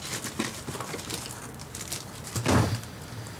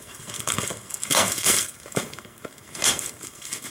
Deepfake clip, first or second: second